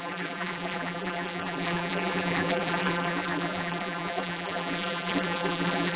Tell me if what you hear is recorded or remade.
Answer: remade